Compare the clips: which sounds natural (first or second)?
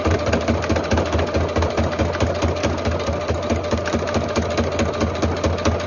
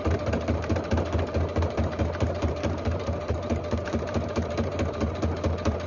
first